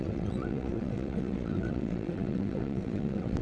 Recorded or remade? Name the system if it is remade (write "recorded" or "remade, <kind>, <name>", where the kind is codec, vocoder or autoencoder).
remade, vocoder, WaveNeXt